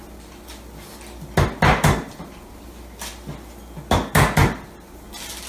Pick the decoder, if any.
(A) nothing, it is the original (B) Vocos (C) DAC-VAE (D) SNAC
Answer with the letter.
A